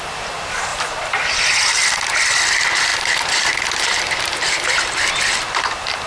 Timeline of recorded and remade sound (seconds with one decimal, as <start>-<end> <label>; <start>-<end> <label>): 0.0-0.7 recorded; 0.7-1.4 remade; 1.4-2.9 recorded; 2.9-5.1 remade; 5.1-6.1 recorded